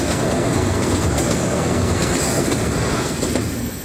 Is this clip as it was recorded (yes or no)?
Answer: no